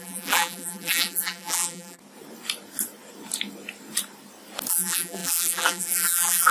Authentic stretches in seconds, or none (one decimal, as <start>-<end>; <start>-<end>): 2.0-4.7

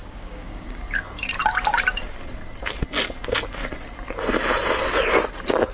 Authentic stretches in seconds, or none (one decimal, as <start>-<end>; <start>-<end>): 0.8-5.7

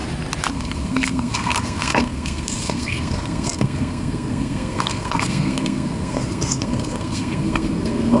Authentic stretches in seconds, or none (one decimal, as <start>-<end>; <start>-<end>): 0.0-0.5

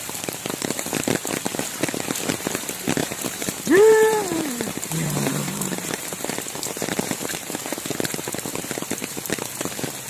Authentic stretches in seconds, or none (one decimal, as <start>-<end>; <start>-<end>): 0.0-3.0; 7.6-8.5; 9.4-10.1

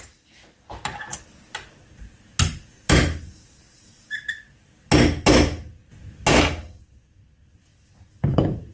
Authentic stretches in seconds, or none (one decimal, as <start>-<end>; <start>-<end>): 0.0-8.7